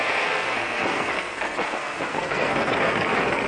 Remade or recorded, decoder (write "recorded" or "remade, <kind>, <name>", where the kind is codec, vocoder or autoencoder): remade, codec, SNAC